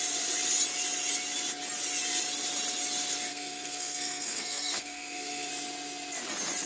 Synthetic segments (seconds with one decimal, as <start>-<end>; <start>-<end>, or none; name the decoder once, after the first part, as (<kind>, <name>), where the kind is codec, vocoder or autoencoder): 3.3-5.5 (codec, SNAC)